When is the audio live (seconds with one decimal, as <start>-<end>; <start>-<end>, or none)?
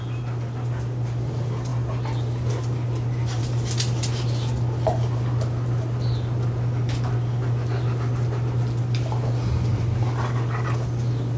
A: 0.0-11.4